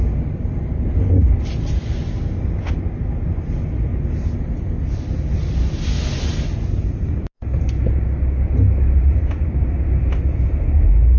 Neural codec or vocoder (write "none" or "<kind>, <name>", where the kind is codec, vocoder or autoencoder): none